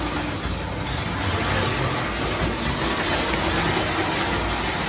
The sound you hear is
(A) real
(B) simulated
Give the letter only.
A